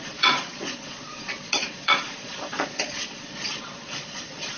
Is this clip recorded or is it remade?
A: remade